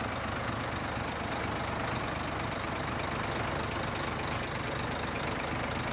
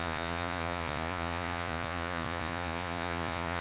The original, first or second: first